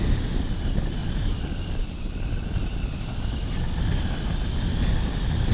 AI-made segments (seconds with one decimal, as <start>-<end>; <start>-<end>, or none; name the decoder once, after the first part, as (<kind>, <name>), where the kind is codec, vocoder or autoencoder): none